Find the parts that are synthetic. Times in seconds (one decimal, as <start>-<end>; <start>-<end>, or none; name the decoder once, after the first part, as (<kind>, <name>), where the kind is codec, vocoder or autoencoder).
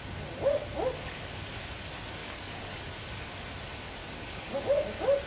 2.2-3.4 (codec, DAC); 4.0-4.6